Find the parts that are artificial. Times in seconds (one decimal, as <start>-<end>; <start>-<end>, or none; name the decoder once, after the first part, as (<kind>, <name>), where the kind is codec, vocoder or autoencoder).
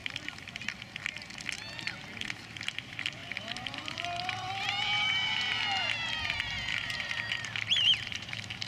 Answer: 3.2-6.1 (vocoder, BigVGAN v2); 6.7-8.7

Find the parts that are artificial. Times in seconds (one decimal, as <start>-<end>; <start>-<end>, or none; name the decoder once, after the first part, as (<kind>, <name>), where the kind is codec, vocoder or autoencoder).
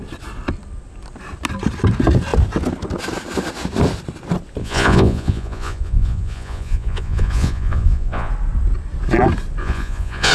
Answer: 4.6-8.3 (vocoder, Vocos); 9.6-10.3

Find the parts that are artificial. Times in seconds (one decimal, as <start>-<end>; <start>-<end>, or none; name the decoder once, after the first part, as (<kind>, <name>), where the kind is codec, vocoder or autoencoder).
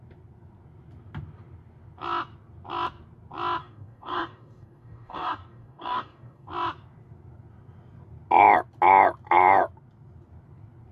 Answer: 3.6-6.5 (codec, DAC)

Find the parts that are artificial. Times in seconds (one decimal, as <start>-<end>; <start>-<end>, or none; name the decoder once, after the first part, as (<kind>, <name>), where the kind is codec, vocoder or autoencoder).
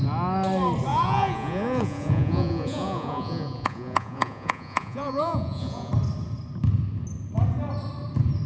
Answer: 0.9-5.9 (vocoder, Vocos)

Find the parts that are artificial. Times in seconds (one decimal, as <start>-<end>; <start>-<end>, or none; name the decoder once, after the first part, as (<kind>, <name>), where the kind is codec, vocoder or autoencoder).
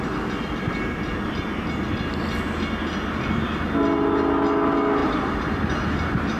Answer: 5.0-5.7 (vocoder, BigVGAN v2)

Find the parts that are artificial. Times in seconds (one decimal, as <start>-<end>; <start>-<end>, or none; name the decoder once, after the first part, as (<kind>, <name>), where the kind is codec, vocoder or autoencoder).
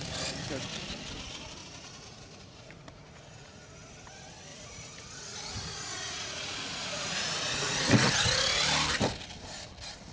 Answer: 1.6-3.9 (vocoder, Vocos); 4.5-7.9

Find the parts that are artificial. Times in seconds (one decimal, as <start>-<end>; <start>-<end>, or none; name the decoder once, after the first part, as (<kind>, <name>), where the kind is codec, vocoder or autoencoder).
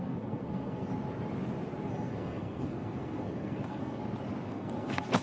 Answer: 0.0-0.9 (codec, SNAC); 1.9-4.0; 4.5-5.2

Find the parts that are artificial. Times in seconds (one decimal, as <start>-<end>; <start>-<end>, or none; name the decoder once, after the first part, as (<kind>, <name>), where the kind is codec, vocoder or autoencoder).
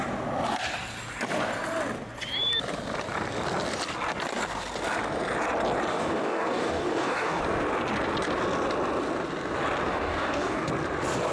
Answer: 5.9-7.4 (codec, DAC); 9.9-10.7